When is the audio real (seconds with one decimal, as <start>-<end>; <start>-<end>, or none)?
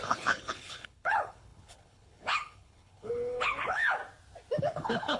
4.0-4.6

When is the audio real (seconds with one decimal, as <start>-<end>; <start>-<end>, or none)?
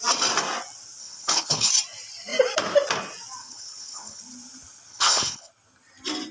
0.0-1.0; 1.7-3.4; 4.2-4.9; 5.5-6.3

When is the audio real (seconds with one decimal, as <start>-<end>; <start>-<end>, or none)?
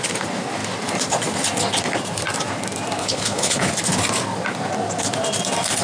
0.0-3.0; 3.7-5.8